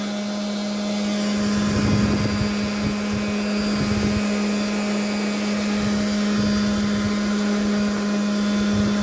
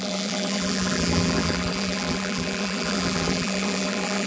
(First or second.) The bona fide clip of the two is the first